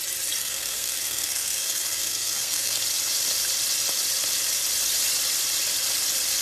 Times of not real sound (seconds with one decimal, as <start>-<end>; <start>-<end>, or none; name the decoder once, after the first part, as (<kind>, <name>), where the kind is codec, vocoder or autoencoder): 0.4-2.8 (codec, SNAC)